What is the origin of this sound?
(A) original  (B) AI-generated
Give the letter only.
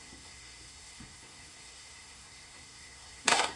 B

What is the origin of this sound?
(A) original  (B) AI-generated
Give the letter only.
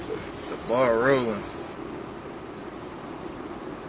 A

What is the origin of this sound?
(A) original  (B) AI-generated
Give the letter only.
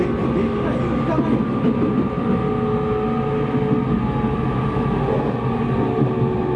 A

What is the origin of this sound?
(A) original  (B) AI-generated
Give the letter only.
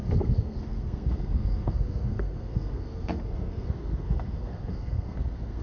B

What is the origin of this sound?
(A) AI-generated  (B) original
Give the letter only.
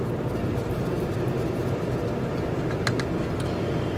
B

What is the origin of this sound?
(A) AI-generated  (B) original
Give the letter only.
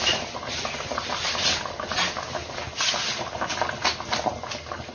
B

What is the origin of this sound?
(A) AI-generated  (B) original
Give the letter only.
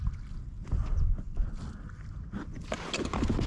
B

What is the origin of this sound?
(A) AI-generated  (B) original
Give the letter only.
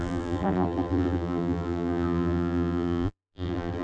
A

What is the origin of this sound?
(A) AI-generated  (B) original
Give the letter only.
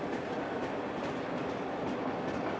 B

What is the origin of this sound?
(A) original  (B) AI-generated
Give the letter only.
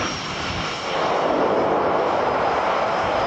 B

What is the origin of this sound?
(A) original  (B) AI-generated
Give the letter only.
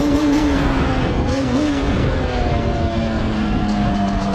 B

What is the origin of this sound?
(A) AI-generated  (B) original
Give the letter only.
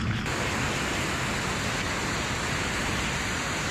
B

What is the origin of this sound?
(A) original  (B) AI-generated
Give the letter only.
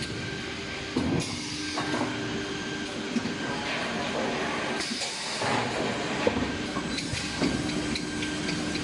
A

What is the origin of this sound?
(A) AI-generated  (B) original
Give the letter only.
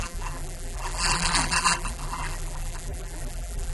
A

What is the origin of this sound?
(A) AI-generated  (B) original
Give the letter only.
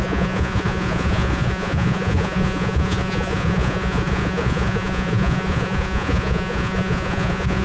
A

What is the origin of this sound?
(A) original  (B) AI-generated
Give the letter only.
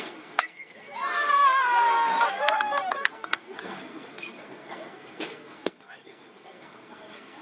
B